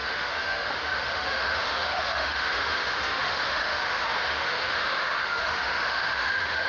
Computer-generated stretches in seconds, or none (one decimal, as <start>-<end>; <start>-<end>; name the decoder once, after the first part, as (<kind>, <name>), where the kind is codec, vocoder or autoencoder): 0.0-6.7 (autoencoder, DAC-VAE)